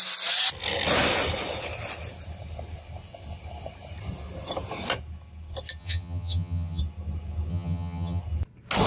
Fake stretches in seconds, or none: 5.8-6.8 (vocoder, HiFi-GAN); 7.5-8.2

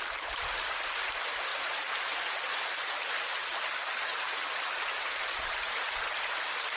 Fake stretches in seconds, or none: none